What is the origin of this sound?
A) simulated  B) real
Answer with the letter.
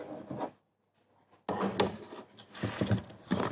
B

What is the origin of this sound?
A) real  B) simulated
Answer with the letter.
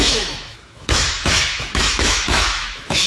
B